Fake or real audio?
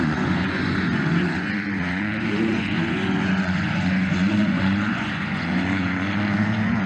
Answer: fake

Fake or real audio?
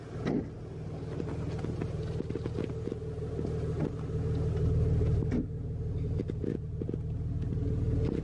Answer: real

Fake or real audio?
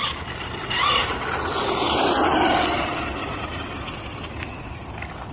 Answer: real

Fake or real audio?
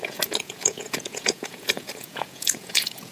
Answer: fake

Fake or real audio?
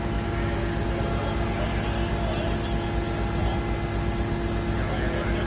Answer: real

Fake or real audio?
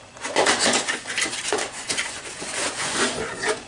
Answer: fake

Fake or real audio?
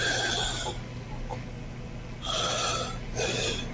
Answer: real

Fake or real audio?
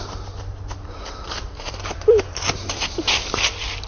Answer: real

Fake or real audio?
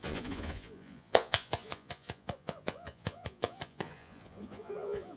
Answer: fake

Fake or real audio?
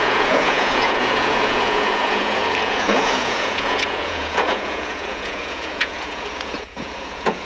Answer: fake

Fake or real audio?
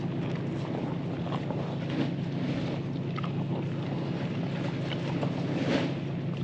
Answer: real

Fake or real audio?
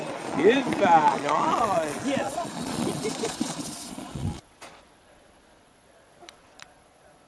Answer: fake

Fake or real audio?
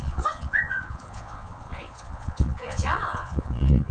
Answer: fake